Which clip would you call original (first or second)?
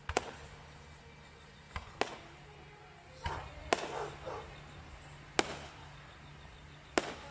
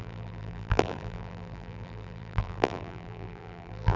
first